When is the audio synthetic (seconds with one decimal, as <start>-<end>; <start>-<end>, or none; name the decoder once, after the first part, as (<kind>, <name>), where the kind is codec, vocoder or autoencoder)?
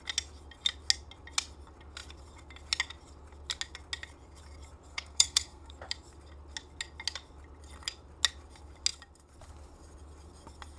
4.9-5.7 (codec, SNAC)